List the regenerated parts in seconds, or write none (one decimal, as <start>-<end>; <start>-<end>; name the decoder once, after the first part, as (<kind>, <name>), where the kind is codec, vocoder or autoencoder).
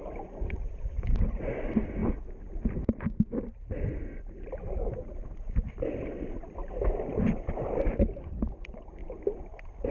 none